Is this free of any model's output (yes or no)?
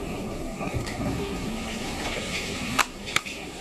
no